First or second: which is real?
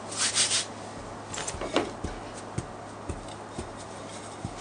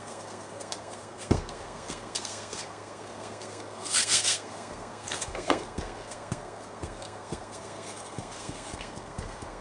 first